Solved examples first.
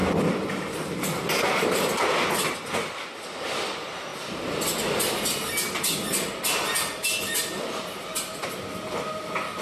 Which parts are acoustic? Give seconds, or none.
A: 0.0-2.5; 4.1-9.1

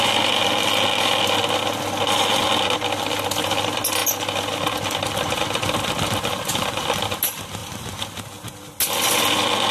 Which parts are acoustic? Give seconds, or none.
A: 0.0-9.7

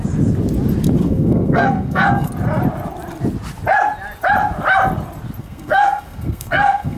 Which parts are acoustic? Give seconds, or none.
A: 0.0-1.0; 2.3-5.4

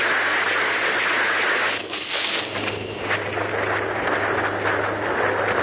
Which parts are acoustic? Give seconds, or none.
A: 0.0-1.8; 2.4-5.6

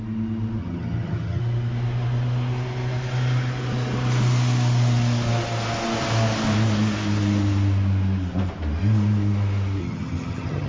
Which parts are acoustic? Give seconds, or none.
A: 0.0-0.6; 1.4-9.8

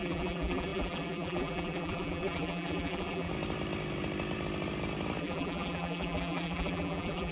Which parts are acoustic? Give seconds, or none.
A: 3.3-5.2